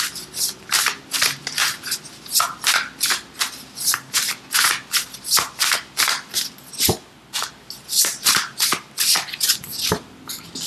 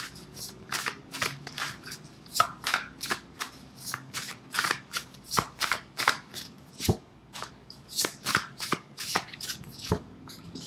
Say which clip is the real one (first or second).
first